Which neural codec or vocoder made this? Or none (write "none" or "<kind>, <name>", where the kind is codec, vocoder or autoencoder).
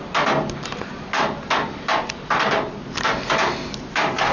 none